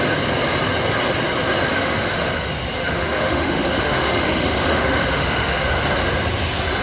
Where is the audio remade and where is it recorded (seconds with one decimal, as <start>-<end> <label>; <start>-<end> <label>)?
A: 0.0-1.7 recorded; 1.7-2.3 remade; 2.3-2.8 recorded; 2.8-5.7 remade; 5.7-6.8 recorded